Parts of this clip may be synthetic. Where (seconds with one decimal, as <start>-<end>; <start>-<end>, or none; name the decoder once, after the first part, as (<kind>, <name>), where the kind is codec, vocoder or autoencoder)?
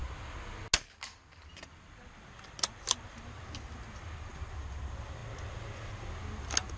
none